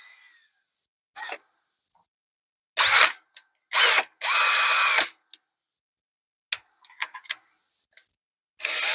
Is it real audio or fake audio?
real